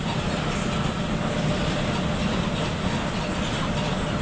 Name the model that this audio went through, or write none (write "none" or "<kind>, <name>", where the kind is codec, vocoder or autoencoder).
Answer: none